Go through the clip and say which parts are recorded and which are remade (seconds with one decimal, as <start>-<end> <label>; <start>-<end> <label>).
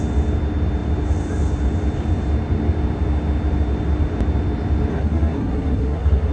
0.0-4.9 recorded; 4.9-6.3 remade